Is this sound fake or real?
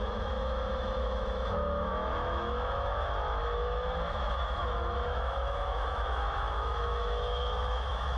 fake